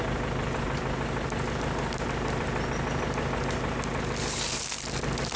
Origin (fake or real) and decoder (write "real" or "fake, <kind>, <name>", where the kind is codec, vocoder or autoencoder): real